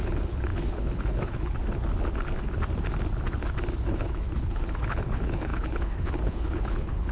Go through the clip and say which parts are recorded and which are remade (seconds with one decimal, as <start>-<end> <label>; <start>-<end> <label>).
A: 0.0-1.6 remade; 1.6-3.8 recorded; 3.8-7.1 remade